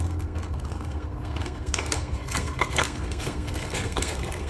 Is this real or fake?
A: fake